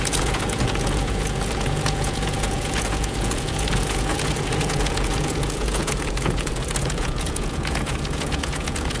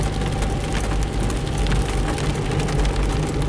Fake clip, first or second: first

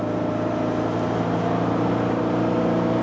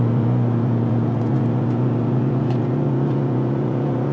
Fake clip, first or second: second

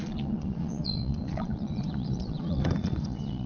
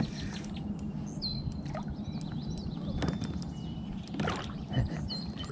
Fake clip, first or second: first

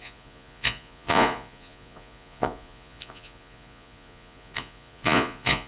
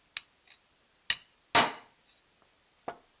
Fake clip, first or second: first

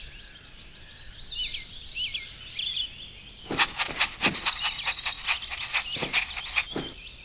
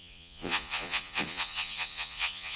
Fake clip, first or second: second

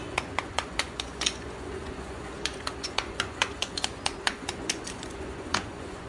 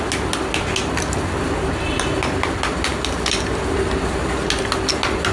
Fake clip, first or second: first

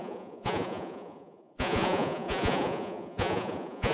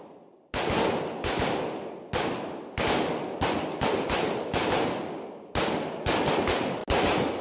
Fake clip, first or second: first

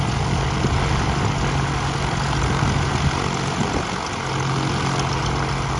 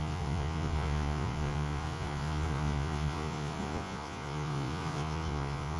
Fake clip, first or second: second